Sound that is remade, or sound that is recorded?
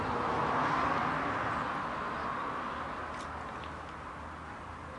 recorded